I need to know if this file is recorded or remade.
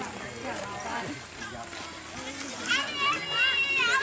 recorded